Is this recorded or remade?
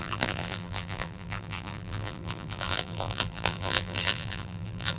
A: remade